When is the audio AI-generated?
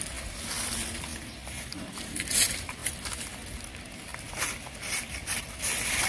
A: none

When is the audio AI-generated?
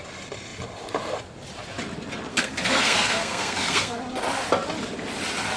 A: 2.3-4.0